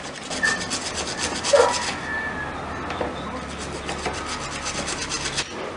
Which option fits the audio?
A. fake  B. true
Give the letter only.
B